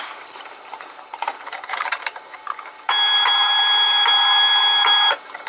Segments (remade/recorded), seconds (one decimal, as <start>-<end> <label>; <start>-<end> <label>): 0.0-5.5 remade